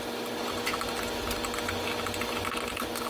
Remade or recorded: recorded